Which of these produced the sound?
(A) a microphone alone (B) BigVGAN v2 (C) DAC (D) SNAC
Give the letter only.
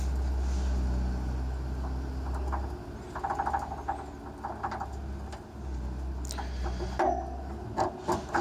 A